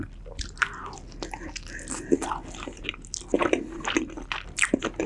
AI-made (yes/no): no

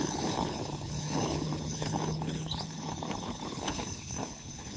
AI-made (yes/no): yes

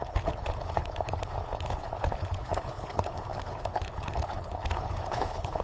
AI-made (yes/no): yes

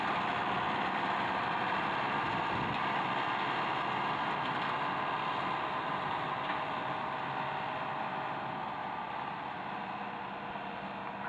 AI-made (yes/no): no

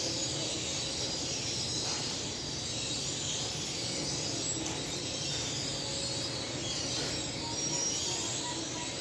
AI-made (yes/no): no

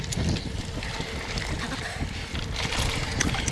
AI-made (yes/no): no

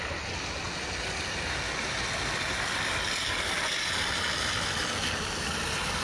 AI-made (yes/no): no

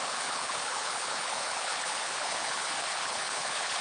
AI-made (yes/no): yes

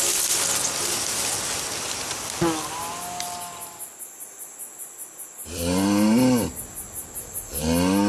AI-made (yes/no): no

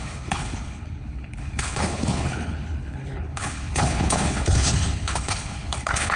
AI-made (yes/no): yes